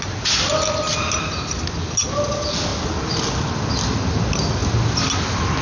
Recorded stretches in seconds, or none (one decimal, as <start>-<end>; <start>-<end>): 0.0-5.6